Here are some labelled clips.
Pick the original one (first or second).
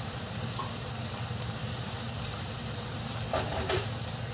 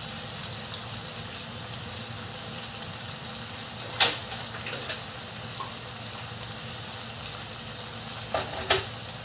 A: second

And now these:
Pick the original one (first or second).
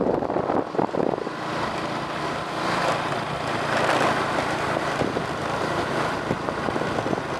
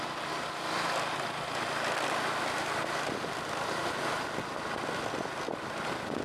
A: second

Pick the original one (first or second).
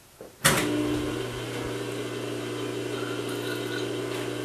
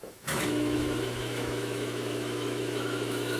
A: first